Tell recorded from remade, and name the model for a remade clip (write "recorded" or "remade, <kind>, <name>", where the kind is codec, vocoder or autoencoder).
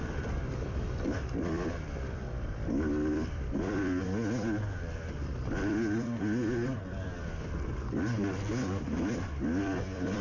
remade, vocoder, BigVGAN v2